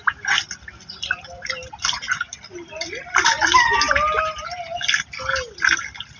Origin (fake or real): real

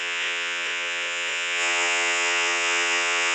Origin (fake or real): fake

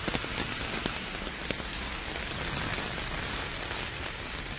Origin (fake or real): real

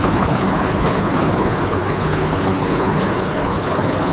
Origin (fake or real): fake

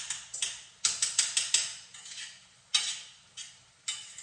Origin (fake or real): real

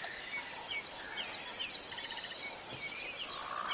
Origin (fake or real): real